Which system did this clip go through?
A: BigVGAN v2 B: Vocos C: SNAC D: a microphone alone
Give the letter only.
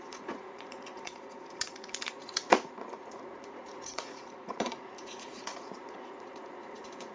B